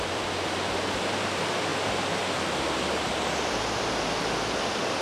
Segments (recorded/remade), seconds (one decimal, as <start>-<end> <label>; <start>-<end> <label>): 0.0-1.7 remade; 1.7-3.9 recorded; 3.9-5.0 remade